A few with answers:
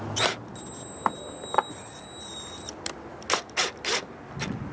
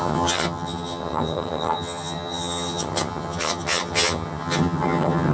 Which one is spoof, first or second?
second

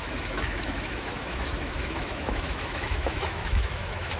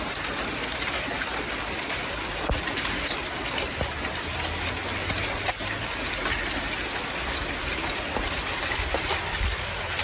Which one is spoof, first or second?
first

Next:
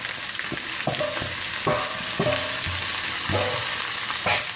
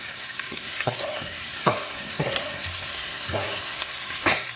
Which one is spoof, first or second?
second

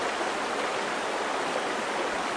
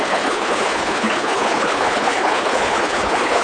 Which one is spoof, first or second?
second